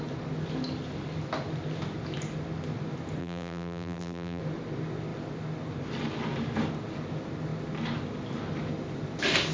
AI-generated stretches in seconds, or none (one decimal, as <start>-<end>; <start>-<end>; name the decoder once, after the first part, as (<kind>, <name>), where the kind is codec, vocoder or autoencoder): 3.2-4.4 (vocoder, BigVGAN v2)